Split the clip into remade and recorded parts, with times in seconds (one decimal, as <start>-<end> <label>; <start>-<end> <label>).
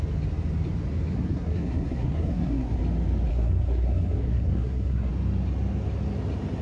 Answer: 0.0-1.1 recorded; 1.1-2.8 remade; 2.8-3.3 recorded; 3.3-5.1 remade; 5.1-6.6 recorded